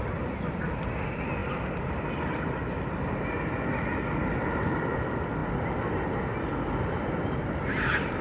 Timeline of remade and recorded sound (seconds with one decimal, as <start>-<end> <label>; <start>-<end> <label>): 0.0-8.2 recorded